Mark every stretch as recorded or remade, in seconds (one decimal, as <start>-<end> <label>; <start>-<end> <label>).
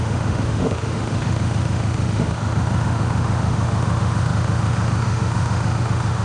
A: 0.0-6.2 remade